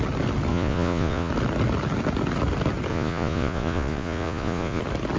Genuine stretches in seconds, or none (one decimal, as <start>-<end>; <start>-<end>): 0.0-0.5; 1.3-2.9; 4.8-5.2